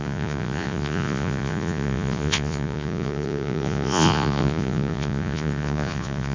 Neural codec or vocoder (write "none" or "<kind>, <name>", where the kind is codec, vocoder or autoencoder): vocoder, Vocos